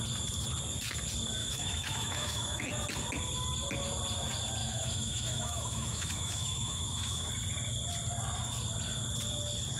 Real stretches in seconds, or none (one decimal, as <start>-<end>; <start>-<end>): 0.0-1.4; 2.6-4.6; 7.3-9.8

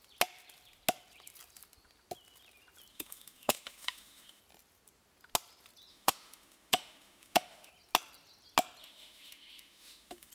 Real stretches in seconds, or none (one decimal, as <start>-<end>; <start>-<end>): 0.0-2.9; 4.4-5.9; 7.7-8.8

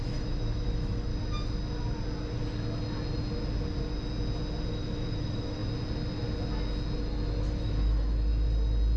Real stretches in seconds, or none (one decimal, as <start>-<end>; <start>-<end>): 1.1-4.7; 5.6-7.0; 8.3-9.0